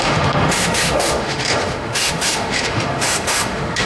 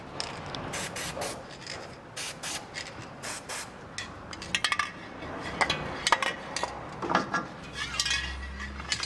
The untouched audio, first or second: second